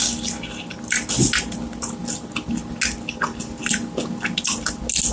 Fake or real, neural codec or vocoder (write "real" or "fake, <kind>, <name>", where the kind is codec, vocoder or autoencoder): real